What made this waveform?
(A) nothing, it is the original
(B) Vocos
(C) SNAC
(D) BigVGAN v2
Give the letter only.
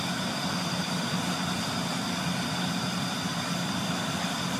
A